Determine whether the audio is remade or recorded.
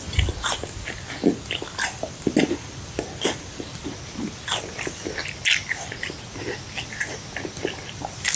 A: recorded